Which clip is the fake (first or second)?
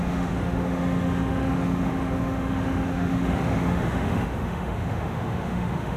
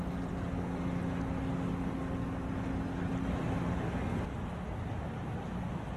first